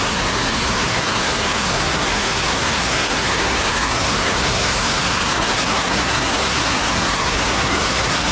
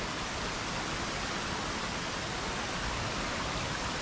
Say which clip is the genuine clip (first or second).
second